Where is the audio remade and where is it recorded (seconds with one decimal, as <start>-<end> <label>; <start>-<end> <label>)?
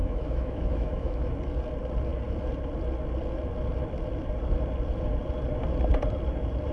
0.0-1.3 remade; 1.3-6.7 recorded